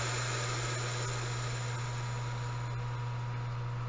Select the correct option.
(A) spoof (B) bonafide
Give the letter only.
B